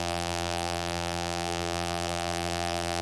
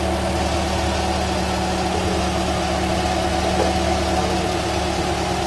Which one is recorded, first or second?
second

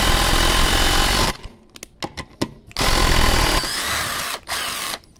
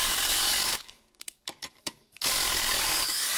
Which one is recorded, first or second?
first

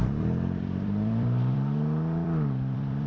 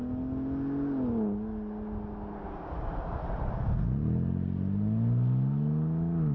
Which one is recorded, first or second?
second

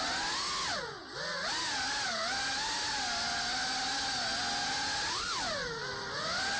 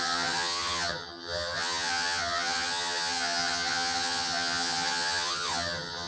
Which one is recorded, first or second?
first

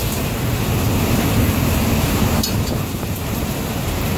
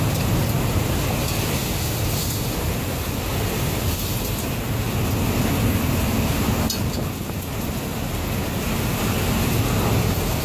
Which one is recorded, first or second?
second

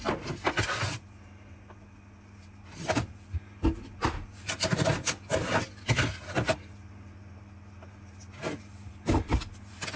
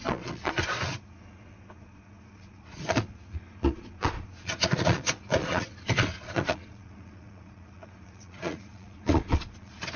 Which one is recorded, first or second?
first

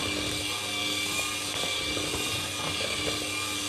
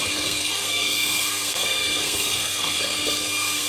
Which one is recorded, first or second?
first